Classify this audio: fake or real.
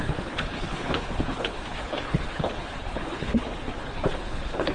fake